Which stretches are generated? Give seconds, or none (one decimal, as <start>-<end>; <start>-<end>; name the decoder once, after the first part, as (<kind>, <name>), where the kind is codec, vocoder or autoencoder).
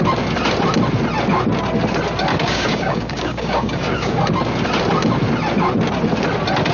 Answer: 2.3-4.2 (codec, DAC)